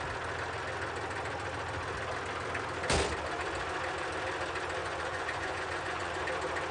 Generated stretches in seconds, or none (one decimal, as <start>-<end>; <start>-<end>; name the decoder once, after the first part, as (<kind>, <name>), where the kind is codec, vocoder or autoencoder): 4.8-6.2 (vocoder, Vocos)